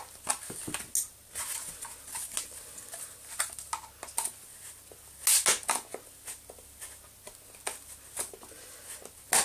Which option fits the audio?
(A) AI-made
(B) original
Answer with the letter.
B